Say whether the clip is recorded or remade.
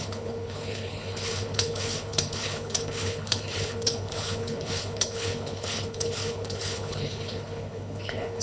remade